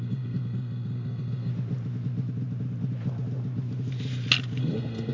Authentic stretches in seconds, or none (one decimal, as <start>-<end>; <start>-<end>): 1.5-4.6